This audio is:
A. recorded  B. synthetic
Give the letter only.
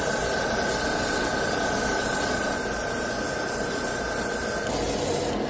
A